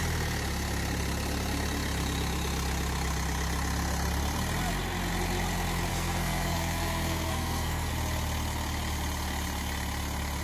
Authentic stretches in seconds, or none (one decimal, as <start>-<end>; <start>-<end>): 0.0-5.9; 7.9-10.4